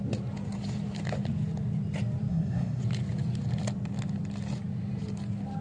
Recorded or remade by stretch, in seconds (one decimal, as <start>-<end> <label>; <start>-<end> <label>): 0.0-2.3 recorded; 2.3-2.8 remade; 2.8-5.6 recorded